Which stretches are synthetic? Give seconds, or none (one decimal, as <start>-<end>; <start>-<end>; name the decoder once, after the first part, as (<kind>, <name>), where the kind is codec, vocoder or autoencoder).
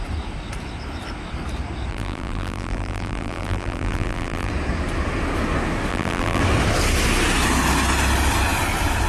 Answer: 1.9-4.5 (vocoder, BigVGAN v2); 5.9-6.4